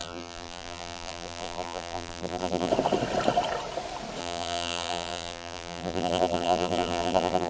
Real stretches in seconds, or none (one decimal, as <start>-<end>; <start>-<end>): 2.7-4.2